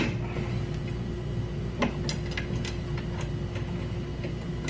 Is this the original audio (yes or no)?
yes